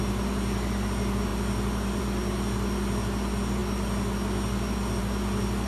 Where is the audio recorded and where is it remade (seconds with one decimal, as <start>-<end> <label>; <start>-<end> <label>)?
0.0-5.7 recorded